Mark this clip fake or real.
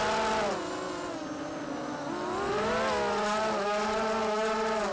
real